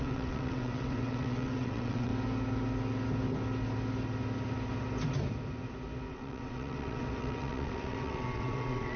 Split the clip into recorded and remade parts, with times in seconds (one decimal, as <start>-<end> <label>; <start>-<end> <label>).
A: 0.0-2.1 remade; 2.1-6.1 recorded; 6.1-9.0 remade